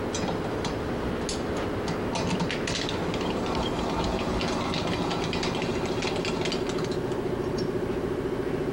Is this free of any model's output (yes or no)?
yes